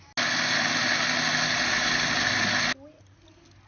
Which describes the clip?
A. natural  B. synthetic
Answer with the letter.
A